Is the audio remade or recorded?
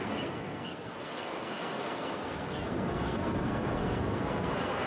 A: remade